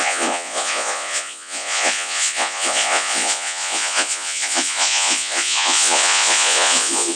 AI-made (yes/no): yes